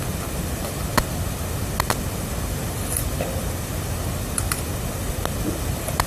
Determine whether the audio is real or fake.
real